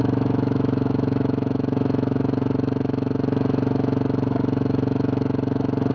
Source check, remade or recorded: remade